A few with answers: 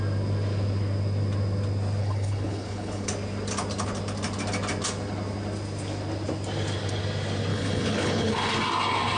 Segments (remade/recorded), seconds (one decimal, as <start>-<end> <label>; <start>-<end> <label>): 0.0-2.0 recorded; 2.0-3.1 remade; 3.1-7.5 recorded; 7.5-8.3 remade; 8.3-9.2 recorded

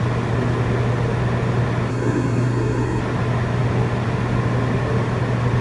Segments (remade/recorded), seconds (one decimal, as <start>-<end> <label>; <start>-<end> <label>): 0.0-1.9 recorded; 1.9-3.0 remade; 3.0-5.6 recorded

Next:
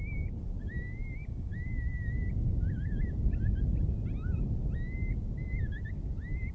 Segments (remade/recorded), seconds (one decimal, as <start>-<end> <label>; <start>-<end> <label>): 0.0-6.5 recorded

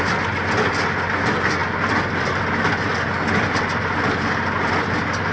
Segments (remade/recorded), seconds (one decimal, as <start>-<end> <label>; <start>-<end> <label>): 0.0-5.3 recorded

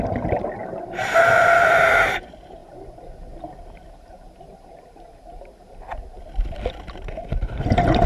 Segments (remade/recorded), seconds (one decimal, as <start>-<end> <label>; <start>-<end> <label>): 0.0-0.6 remade; 0.6-1.2 recorded; 1.2-2.6 remade; 2.6-6.7 recorded; 6.7-8.1 remade

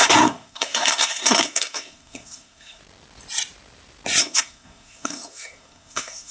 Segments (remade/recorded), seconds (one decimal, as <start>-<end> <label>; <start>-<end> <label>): 0.0-2.8 remade; 2.8-4.2 recorded; 4.2-6.3 remade

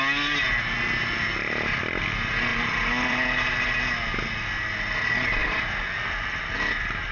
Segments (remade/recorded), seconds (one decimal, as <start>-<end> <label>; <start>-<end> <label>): 0.0-2.5 recorded; 2.5-3.8 remade; 3.8-5.4 recorded; 5.4-7.1 remade

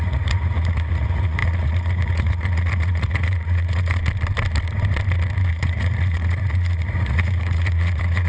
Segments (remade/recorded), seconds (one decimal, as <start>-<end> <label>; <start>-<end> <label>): 0.0-4.0 remade; 4.0-5.5 recorded; 5.5-8.3 remade